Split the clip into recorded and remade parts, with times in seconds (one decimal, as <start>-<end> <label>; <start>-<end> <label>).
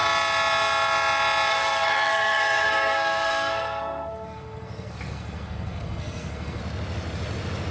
0.0-1.5 recorded; 1.5-6.6 remade; 6.6-7.7 recorded